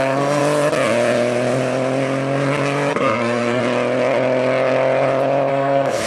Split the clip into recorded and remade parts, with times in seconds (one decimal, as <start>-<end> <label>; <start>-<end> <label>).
0.0-0.4 remade; 0.4-2.9 recorded; 2.9-3.6 remade; 3.6-5.5 recorded; 5.5-6.1 remade